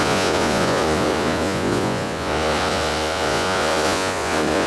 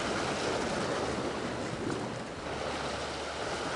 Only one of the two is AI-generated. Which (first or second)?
first